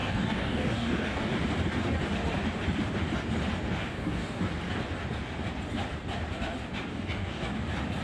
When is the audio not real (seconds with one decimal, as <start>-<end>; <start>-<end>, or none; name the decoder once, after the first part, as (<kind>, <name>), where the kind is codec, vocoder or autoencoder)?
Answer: 0.0-1.3 (codec, DAC); 3.8-4.4; 6.9-7.5